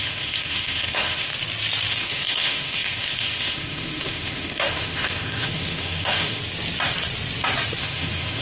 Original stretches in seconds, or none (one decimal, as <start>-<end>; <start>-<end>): 1.3-1.9; 6.4-7.8

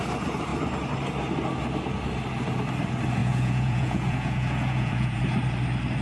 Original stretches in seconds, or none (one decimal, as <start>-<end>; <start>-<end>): 0.0-3.2; 5.2-6.0

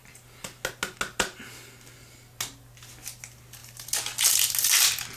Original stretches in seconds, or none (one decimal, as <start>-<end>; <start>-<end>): 0.0-5.2

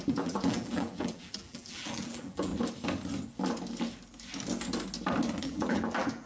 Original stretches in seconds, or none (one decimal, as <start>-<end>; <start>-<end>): 2.5-5.4